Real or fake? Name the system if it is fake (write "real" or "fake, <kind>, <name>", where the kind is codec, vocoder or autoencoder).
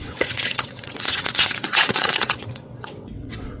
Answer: fake, vocoder, WaveNeXt